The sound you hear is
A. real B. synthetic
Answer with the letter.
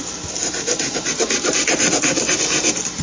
A